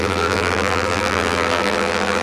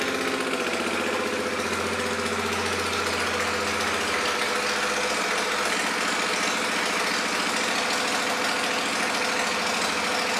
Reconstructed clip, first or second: first